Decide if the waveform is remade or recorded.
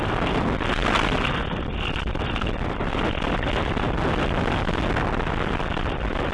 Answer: recorded